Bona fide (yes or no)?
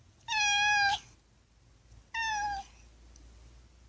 yes